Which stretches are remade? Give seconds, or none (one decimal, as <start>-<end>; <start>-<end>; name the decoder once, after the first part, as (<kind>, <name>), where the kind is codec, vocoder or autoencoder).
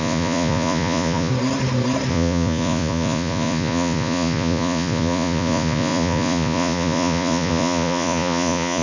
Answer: 0.0-1.3 (vocoder, Vocos); 2.1-8.8